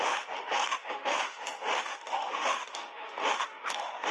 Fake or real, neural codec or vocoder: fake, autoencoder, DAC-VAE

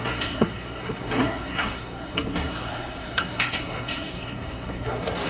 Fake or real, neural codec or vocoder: fake, codec, SNAC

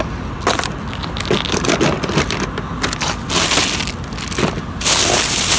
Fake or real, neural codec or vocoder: real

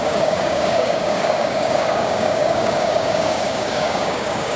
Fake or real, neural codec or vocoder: fake, codec, DAC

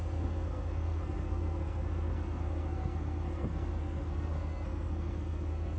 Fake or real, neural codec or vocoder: fake, codec, SNAC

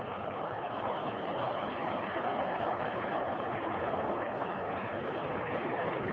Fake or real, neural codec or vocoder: fake, codec, HILCodec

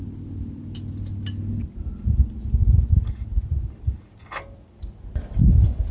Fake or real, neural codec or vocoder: real